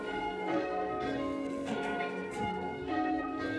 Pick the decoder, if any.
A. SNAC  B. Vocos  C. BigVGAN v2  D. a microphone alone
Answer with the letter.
A